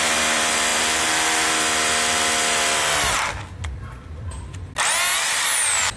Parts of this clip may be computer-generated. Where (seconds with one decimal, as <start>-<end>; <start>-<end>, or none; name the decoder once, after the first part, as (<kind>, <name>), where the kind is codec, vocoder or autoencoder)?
none